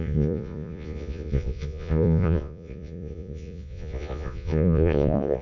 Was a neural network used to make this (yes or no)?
yes